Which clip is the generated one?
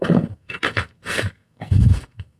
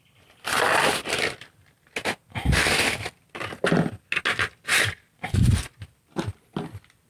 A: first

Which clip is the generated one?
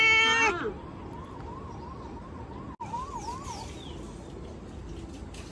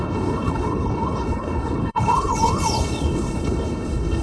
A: second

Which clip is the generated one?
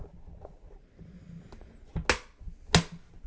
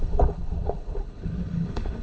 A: second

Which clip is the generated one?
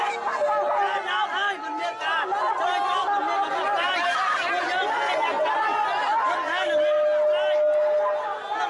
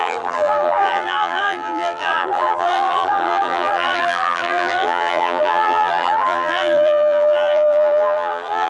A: second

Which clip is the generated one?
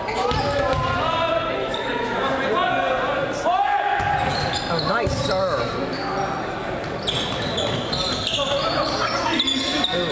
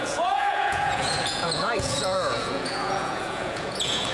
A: second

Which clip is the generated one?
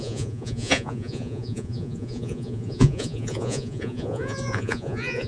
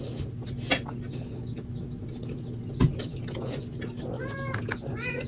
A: first